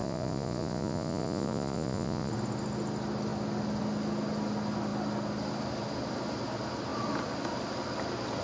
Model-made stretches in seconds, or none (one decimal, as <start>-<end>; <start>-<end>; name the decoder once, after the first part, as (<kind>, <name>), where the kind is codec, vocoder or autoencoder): 0.0-2.3 (vocoder, Vocos)